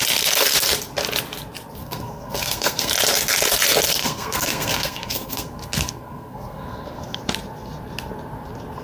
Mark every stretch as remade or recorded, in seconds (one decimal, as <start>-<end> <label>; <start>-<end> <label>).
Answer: 0.0-1.8 recorded; 1.8-2.9 remade; 2.9-4.0 recorded; 4.0-7.2 remade; 7.2-8.8 recorded